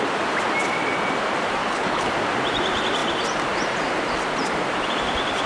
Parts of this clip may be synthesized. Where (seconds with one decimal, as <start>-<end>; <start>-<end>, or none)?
1.6-2.1